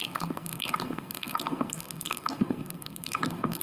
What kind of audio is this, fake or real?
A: fake